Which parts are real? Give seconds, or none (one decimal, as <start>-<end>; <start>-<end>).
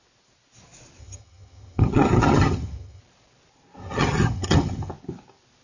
0.0-1.0; 3.0-3.8; 4.9-5.6